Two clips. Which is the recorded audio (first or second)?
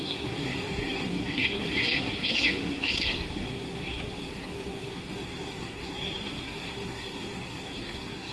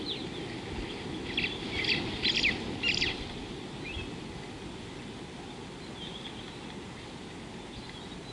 second